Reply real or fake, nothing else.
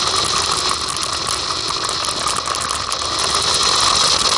real